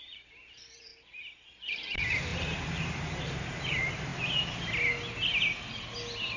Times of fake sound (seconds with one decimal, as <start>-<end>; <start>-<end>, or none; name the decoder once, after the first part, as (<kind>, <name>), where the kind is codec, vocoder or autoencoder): 0.0-0.9 (vocoder, BigVGAN v2); 1.5-4.1

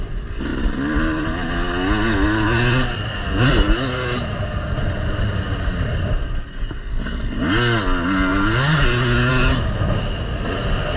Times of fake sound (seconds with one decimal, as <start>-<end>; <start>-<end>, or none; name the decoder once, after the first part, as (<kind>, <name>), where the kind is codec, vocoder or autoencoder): none

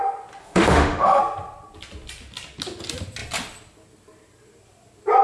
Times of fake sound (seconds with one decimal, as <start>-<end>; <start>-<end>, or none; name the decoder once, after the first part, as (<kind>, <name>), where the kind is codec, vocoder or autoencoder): 0.4-1.2 (autoencoder, DAC-VAE)

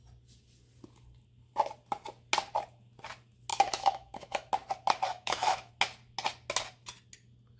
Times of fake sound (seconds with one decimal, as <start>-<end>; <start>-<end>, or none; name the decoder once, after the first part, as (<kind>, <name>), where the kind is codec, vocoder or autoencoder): 3.5-4.5 (autoencoder, DAC-VAE); 5.1-5.7

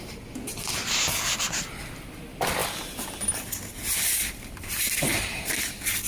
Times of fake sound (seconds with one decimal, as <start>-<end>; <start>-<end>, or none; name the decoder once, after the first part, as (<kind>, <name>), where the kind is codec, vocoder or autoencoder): 0.5-1.2 (vocoder, BigVGAN v2); 2.6-3.5